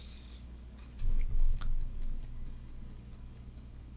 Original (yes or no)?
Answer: no